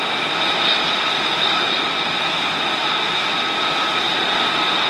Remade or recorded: recorded